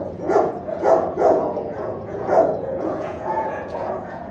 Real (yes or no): no